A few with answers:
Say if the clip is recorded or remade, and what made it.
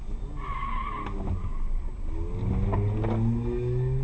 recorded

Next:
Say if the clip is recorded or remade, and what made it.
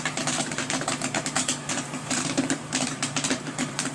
remade, vocoder, BigVGAN v2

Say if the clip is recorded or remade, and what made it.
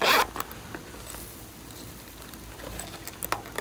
recorded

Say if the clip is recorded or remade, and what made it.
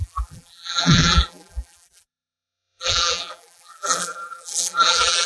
remade, vocoder, BigVGAN v2